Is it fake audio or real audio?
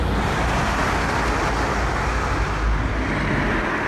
real